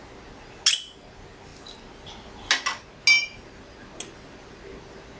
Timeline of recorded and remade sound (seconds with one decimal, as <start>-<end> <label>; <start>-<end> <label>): 0.0-5.2 recorded